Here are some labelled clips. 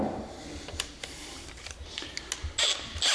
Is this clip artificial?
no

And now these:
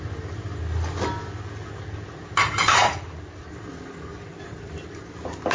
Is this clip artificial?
no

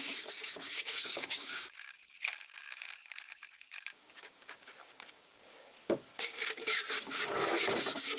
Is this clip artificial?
yes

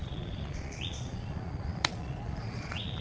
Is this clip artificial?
yes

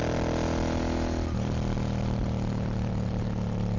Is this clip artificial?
no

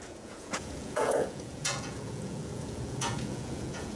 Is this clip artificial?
yes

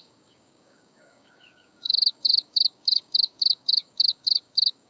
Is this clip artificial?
yes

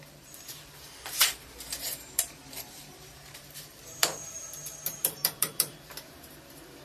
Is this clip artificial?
yes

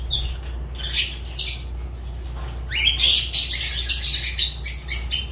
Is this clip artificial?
no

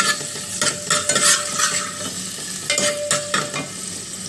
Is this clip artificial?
no